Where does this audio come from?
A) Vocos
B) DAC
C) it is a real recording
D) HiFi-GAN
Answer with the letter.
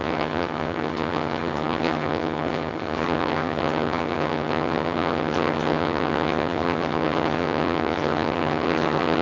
D